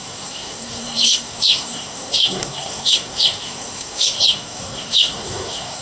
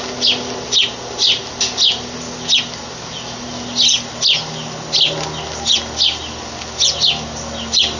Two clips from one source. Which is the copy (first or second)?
first